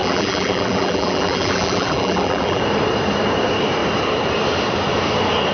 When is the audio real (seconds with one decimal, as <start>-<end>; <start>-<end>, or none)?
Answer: 2.6-5.5